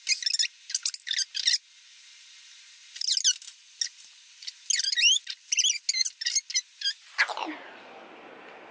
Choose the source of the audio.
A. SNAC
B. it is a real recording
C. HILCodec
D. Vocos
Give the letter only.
B